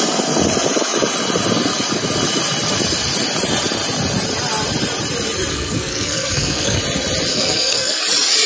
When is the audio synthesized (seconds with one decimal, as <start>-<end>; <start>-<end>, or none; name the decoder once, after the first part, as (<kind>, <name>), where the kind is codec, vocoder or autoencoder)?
5.5-6.8 (codec, SNAC); 7.3-8.0